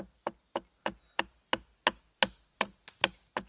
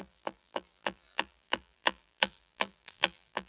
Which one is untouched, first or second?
first